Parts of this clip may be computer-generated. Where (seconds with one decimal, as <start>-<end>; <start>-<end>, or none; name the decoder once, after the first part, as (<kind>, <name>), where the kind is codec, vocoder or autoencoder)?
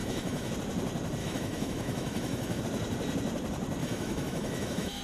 0.0-0.5 (autoencoder, DAC-VAE); 1.2-2.6; 3.8-5.0